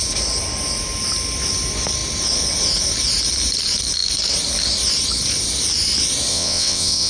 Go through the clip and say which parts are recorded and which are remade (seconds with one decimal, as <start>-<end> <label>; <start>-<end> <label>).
0.0-6.3 recorded; 6.3-7.1 remade